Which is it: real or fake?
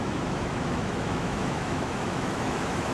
fake